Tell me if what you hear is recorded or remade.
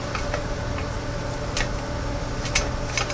recorded